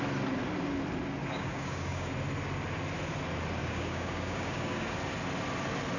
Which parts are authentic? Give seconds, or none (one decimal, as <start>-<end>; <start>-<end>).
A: 0.0-1.2; 2.1-3.6; 5.0-6.0